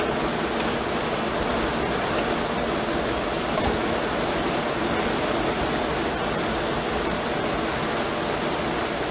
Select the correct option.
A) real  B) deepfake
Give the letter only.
A